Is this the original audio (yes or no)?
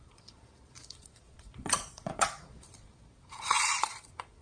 no